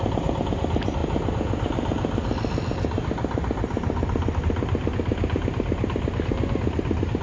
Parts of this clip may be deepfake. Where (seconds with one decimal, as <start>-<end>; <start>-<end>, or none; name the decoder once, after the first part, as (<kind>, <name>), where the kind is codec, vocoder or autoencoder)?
none